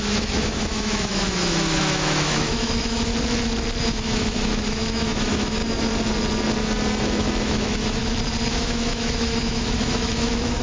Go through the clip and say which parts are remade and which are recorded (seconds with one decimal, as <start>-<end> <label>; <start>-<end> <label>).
0.0-3.1 remade; 3.1-3.9 recorded; 3.9-5.6 remade; 5.6-7.0 recorded; 7.0-8.0 remade; 8.0-8.5 recorded; 8.5-10.6 remade